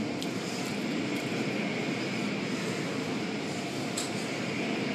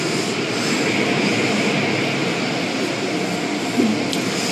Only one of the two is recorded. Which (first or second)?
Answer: second